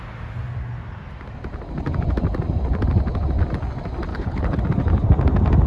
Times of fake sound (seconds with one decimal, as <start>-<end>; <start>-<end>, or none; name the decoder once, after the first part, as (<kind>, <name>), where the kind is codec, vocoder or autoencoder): 4.1-4.6 (codec, HILCodec)